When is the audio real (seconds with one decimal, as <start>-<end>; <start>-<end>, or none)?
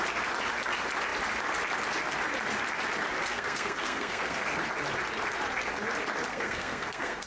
0.0-3.2; 4.6-6.3